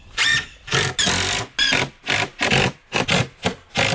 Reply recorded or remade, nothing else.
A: recorded